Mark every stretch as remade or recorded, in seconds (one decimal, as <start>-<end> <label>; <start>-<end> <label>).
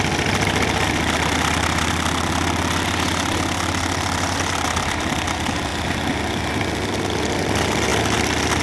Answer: 0.0-8.6 recorded